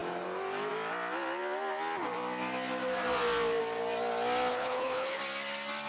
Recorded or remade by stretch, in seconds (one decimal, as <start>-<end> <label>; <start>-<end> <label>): 0.0-4.5 recorded; 4.5-5.2 remade; 5.2-5.9 recorded